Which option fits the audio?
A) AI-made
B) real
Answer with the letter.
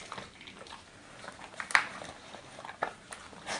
B